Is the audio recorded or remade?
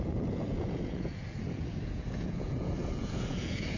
remade